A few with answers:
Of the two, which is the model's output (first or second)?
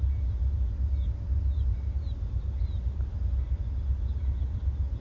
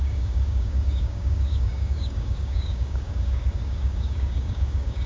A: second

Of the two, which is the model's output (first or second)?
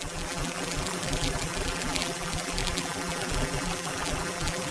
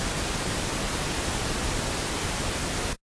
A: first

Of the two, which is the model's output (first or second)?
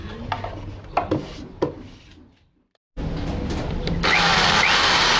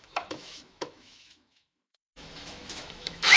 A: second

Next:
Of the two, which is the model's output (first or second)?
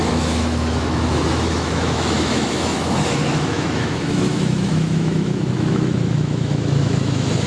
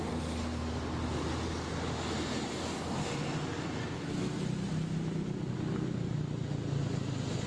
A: first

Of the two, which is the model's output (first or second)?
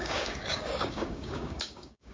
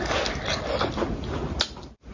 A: first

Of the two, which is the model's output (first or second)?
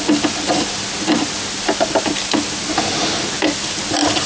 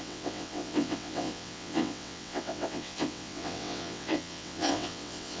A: second